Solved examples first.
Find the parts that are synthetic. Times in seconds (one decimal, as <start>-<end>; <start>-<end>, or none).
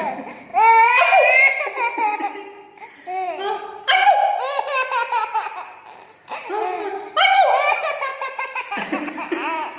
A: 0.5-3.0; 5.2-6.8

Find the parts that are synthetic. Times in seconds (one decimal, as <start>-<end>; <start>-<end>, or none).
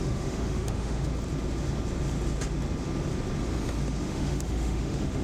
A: 0.0-1.1; 4.0-5.2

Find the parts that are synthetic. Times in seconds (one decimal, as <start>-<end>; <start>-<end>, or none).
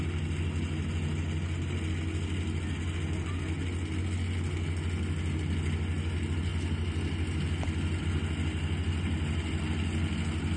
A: none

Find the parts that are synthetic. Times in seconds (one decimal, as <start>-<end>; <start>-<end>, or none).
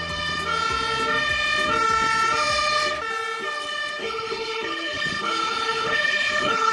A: 4.0-6.7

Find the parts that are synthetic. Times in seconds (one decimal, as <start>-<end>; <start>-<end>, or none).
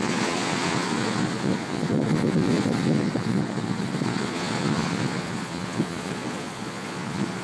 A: 0.0-7.4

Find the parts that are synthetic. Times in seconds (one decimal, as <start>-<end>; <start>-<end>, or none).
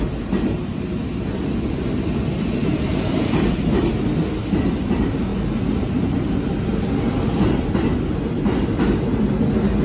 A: 2.6-3.8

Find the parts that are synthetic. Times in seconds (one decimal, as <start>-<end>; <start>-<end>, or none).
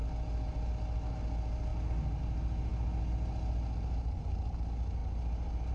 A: none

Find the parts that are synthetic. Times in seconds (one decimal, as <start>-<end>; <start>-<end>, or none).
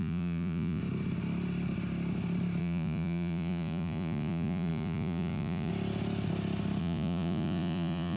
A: 0.0-0.8; 2.6-5.7; 6.8-8.2